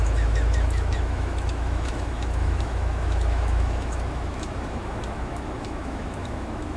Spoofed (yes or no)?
yes